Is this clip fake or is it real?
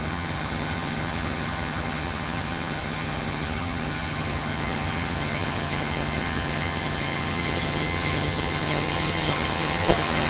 fake